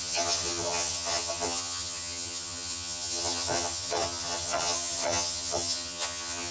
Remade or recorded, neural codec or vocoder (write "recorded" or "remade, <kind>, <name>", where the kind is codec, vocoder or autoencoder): remade, vocoder, HiFi-GAN